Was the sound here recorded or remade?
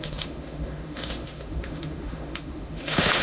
remade